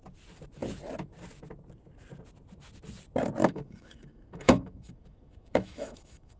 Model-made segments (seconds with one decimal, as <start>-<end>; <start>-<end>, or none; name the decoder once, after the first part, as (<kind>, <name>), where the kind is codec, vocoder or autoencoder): 3.4-6.4 (autoencoder, DAC-VAE)